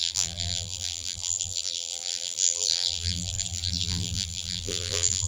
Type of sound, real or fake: fake